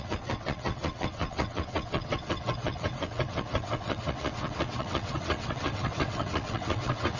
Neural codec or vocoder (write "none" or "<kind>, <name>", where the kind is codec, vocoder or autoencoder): vocoder, WaveNeXt